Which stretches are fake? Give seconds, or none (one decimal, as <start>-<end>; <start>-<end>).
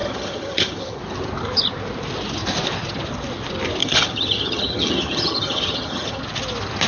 0.0-1.0; 3.8-6.2